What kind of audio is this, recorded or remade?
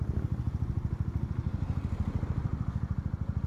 recorded